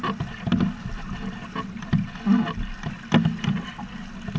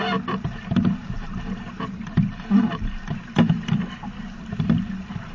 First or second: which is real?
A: first